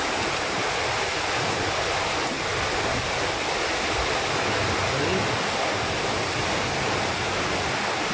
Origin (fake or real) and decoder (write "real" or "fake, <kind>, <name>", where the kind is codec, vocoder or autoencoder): real